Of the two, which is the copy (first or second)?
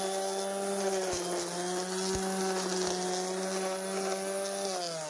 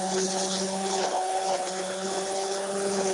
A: second